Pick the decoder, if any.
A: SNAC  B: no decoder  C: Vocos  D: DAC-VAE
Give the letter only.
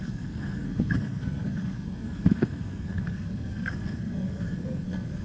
A